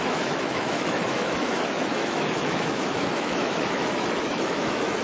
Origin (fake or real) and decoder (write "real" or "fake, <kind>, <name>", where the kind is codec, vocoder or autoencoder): fake, autoencoder, DAC-VAE